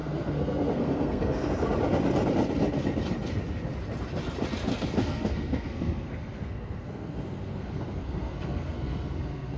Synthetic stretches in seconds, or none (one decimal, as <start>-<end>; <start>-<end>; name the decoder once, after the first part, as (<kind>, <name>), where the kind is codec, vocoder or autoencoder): 0.0-1.5 (codec, SNAC); 4.7-9.6